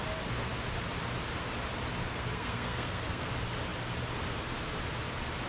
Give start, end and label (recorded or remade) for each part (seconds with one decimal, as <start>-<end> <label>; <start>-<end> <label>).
0.0-2.0 recorded; 2.0-3.3 remade; 3.3-5.5 recorded